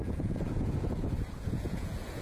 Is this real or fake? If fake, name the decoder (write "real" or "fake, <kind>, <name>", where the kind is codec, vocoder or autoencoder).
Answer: fake, vocoder, Vocos